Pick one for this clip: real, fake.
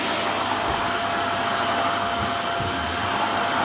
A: real